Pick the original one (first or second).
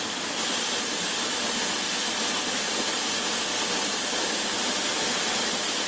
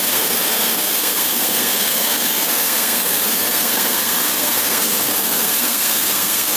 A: first